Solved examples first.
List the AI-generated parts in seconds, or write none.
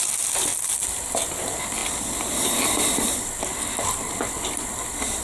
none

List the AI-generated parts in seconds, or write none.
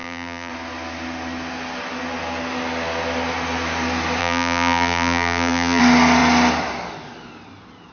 0.0-0.5 (vocoder, BigVGAN v2); 4.2-5.8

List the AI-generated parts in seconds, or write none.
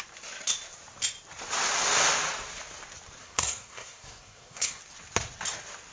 3.2-4.8 (codec, SNAC)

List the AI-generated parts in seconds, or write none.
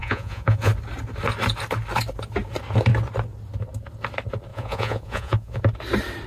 0.0-0.7 (vocoder, Vocos); 4.5-5.6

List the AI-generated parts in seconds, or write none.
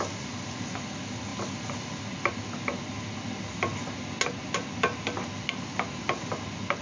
none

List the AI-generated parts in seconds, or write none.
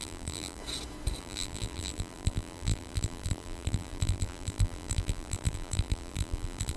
0.0-0.6 (vocoder, BigVGAN v2); 1.2-6.8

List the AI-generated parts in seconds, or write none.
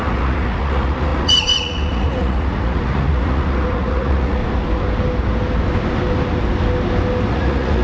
0.0-4.4 (vocoder, Vocos); 7.3-7.8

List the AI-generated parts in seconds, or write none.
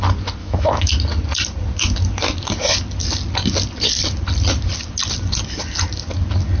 0.4-0.9 (autoencoder, DAC-VAE)